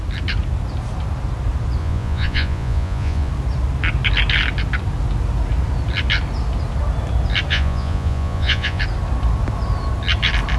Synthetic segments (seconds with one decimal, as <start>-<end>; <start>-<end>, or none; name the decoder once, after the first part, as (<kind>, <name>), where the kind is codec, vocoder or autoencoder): 1.8-3.3 (vocoder, Vocos); 7.5-8.8